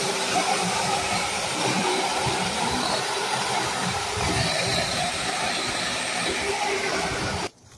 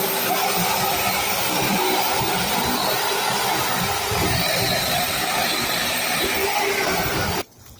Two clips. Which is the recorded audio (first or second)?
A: second